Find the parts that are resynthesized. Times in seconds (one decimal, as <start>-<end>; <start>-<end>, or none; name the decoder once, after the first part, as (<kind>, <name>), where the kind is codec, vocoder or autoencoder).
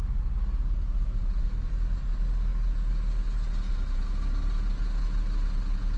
none